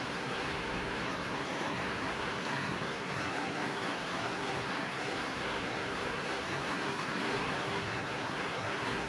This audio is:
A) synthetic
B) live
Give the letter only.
A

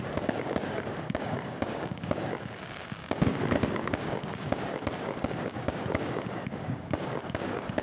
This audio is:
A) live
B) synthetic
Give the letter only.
B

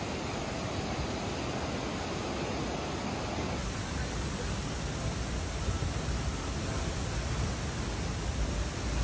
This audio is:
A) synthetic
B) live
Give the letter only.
B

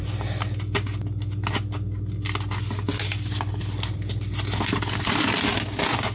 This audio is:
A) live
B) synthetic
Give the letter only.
A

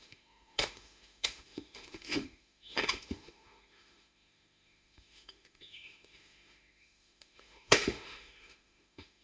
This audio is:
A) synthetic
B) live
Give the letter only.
A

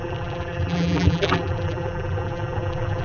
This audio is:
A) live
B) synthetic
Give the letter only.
B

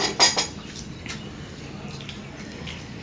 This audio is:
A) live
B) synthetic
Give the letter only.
A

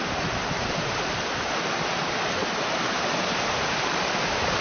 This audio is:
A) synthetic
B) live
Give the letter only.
A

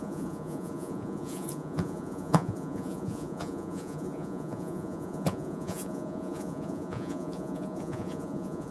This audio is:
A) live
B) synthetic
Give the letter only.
B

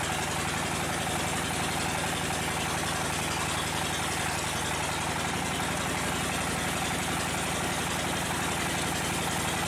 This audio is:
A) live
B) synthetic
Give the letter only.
A